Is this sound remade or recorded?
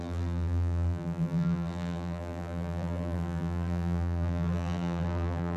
remade